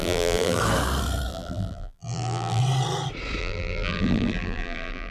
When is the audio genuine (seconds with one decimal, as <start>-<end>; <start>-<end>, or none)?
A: 0.6-1.3; 2.6-3.4